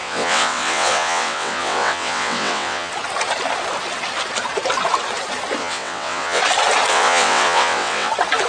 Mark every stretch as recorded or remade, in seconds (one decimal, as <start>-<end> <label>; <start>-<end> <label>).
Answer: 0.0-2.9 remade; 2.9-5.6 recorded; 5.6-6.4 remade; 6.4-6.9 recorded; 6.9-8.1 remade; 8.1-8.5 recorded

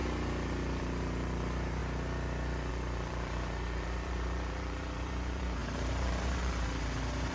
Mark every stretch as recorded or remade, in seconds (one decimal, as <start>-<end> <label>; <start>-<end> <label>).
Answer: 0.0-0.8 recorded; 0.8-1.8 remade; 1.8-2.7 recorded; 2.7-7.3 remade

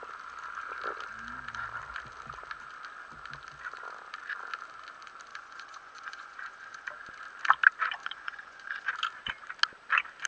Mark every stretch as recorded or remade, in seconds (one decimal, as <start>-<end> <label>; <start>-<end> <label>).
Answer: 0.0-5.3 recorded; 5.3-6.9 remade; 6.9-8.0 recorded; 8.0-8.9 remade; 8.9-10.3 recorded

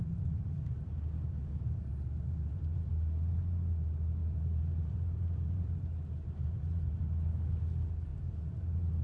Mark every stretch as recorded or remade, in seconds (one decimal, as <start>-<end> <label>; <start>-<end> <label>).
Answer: 0.0-2.9 remade; 2.9-4.2 recorded; 4.2-7.0 remade; 7.0-8.1 recorded; 8.1-9.0 remade

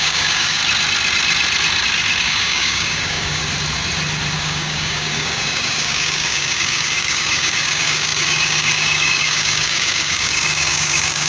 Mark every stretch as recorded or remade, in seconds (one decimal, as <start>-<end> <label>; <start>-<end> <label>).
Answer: 0.0-0.6 remade; 0.6-2.2 recorded; 2.2-3.4 remade; 3.4-4.4 recorded; 4.4-11.3 remade

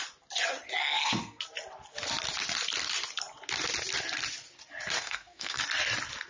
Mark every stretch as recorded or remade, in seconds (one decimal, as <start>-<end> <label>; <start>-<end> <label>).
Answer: 0.0-0.8 recorded; 0.8-1.4 remade; 1.4-5.0 recorded; 5.0-5.6 remade; 5.6-6.3 recorded

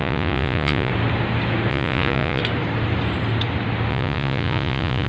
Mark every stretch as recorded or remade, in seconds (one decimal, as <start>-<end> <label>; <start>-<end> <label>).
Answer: 0.0-0.9 remade; 0.9-1.7 recorded; 1.7-2.4 remade; 2.4-3.9 recorded; 3.9-5.1 remade

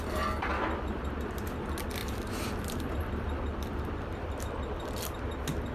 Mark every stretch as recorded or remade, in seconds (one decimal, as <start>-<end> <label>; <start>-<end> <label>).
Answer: 0.0-0.5 recorded; 0.5-1.1 remade; 1.1-2.0 recorded; 2.0-4.4 remade; 4.4-5.7 recorded